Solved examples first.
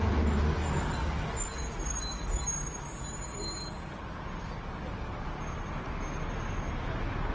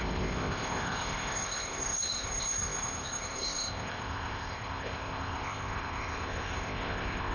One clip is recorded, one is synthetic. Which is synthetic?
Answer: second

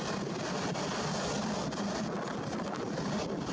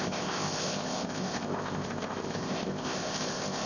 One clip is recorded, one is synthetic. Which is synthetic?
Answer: second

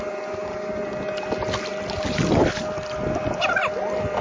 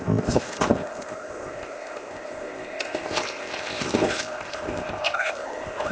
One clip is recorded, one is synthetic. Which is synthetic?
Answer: second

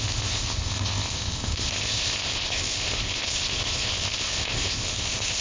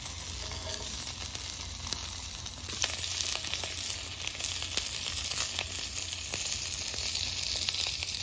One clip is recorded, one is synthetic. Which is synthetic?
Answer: first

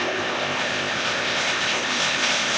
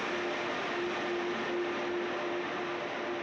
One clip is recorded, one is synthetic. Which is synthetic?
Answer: first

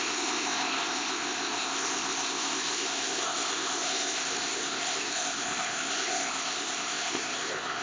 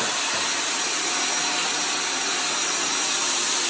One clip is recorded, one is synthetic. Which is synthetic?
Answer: first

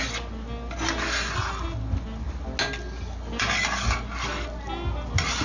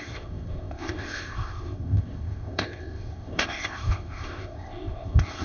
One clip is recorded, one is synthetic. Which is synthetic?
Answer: second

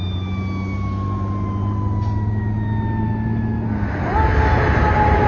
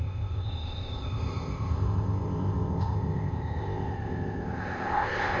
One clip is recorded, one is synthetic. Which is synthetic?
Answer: second